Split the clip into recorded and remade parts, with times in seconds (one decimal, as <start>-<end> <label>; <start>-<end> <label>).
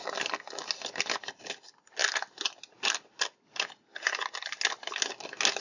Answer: 0.0-5.6 recorded